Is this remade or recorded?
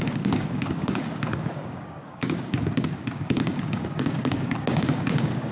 remade